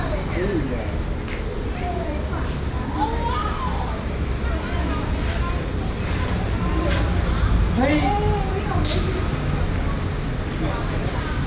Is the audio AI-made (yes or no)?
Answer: no